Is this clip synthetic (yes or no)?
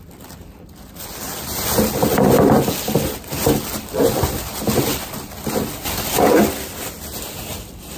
no